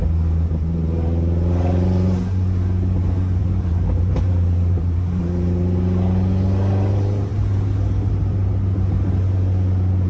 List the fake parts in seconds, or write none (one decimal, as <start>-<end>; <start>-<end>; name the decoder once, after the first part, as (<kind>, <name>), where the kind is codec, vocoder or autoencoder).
3.4-5.2 (vocoder, BigVGAN v2)